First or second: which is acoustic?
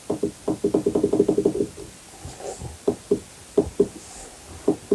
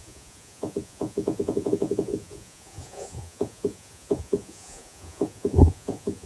first